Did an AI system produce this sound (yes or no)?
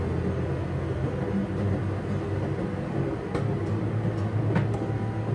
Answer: no